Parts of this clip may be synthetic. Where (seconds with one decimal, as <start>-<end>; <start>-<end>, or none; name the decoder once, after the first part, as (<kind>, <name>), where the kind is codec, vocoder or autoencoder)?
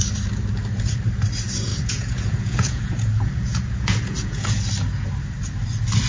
1.7-4.6 (vocoder, Vocos)